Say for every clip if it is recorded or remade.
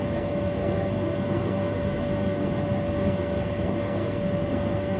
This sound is remade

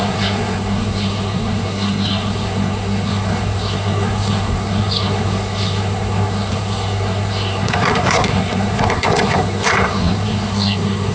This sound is remade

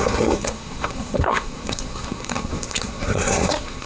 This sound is remade